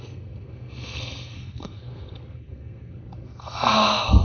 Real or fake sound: fake